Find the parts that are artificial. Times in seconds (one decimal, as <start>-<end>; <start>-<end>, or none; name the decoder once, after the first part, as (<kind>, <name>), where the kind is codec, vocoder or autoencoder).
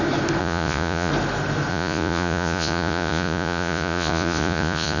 0.4-1.1 (vocoder, Vocos); 1.7-5.0